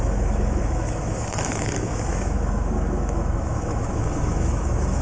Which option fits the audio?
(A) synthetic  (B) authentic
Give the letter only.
A